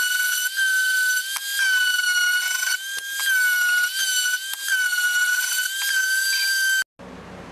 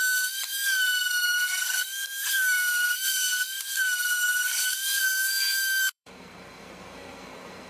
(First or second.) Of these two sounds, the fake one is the second